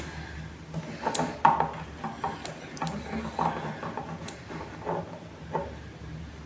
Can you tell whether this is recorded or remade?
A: recorded